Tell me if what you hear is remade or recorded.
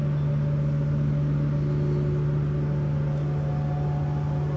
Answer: recorded